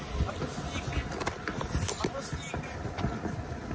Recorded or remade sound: recorded